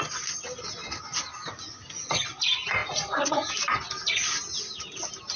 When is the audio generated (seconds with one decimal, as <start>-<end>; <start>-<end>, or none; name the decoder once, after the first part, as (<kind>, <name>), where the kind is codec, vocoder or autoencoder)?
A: 2.8-3.5 (vocoder, Vocos)